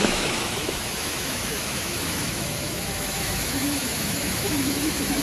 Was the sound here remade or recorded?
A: remade